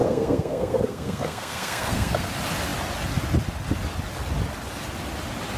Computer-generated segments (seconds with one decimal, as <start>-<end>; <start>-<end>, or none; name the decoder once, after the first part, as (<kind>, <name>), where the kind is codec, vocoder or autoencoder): 0.0-2.3 (codec, SNAC)